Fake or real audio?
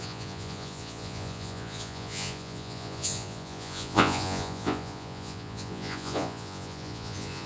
fake